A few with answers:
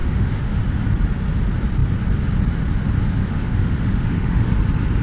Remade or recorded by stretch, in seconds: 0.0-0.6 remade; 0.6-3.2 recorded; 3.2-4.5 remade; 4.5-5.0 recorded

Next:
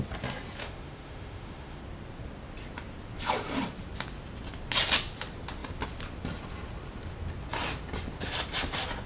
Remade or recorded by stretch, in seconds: 0.0-0.6 recorded; 0.6-1.8 remade; 1.8-9.1 recorded